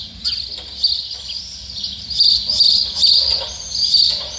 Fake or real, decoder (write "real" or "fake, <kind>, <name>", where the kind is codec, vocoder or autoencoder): real